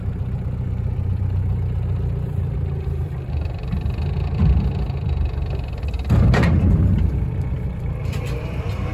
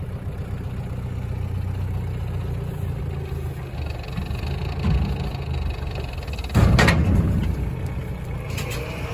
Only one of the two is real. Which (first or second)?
second